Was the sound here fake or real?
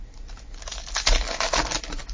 real